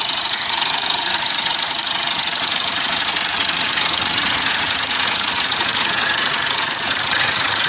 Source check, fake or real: fake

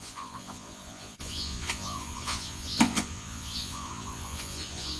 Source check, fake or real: fake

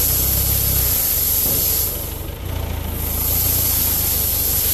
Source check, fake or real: real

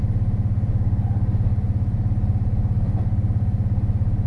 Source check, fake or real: real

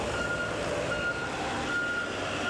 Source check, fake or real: real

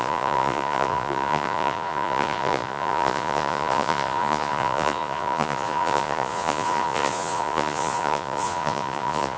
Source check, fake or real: fake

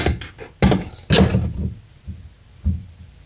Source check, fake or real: real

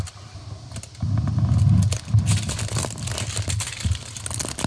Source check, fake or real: real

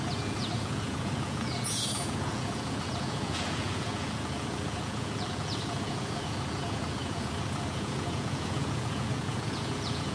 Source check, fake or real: fake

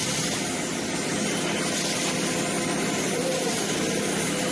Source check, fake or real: real